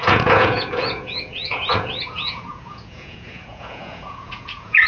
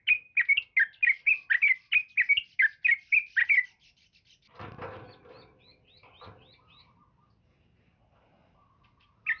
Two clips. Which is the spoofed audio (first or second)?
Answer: first